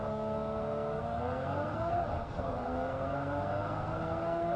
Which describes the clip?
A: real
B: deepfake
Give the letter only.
B